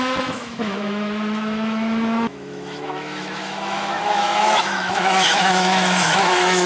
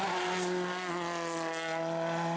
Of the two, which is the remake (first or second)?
first